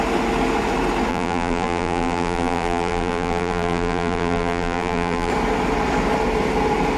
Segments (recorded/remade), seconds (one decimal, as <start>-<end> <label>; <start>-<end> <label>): 0.0-1.1 recorded; 1.1-5.3 remade; 5.3-7.0 recorded